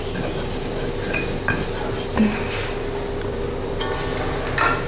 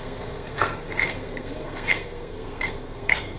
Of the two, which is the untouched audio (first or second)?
first